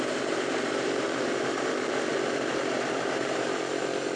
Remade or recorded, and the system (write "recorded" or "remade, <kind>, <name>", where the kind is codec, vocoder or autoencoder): remade, vocoder, BigVGAN v2